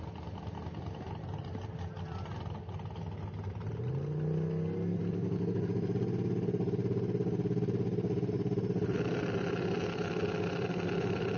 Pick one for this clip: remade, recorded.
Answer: recorded